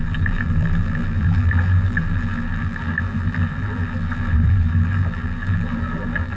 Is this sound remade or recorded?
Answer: remade